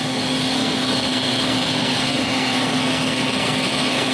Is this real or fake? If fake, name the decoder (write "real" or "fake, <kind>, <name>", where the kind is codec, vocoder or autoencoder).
fake, codec, SNAC